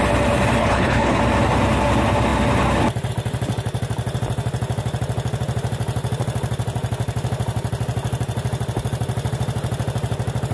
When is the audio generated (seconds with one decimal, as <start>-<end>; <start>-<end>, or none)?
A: 0.6-1.2